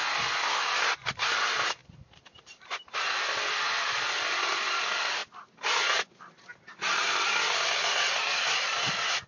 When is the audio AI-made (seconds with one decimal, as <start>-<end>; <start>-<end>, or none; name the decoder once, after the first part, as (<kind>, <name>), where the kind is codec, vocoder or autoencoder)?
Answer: 1.3-5.2 (vocoder, BigVGAN v2); 6.6-8.2